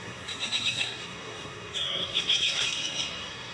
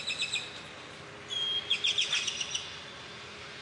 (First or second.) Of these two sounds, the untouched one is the second